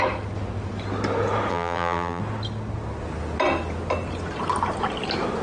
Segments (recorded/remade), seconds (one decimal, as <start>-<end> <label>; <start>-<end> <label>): 0.0-1.5 recorded; 1.5-2.2 remade; 2.2-5.4 recorded